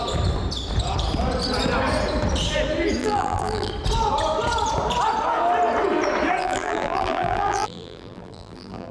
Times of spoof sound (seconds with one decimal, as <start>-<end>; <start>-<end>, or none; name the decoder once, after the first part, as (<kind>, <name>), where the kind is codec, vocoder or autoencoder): 3.0-3.7 (vocoder, BigVGAN v2); 6.4-8.9